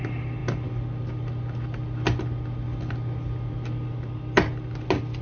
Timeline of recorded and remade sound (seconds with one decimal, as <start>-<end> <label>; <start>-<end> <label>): 0.0-5.2 recorded